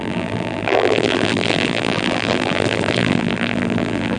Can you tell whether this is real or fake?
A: fake